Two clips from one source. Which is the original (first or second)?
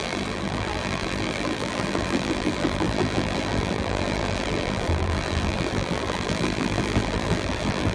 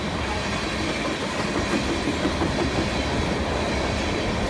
second